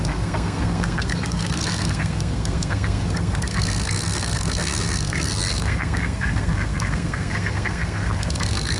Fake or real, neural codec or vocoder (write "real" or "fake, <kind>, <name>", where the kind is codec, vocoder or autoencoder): fake, codec, SNAC